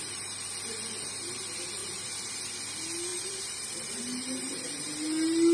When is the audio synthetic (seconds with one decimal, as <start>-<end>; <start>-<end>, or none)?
1.8-2.4; 3.1-4.6